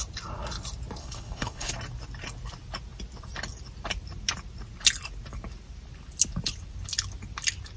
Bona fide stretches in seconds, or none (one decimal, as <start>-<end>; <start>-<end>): 0.0-1.0; 1.7-7.8